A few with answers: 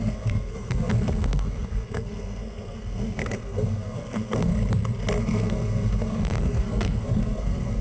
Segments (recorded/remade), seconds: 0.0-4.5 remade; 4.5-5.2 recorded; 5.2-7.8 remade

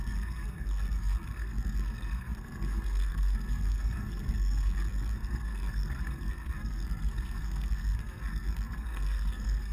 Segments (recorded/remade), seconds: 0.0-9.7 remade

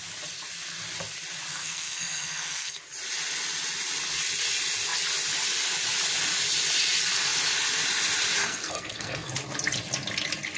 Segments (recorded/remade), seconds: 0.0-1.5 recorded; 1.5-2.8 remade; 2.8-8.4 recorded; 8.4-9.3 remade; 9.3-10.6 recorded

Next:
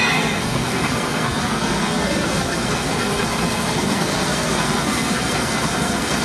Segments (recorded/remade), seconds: 0.0-6.2 remade

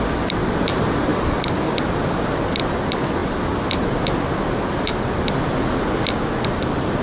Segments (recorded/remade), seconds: 0.0-7.0 recorded

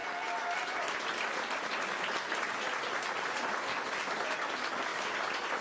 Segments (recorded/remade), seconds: 0.0-5.6 recorded